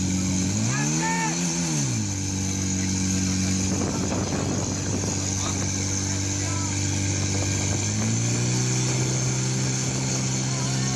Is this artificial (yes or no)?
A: no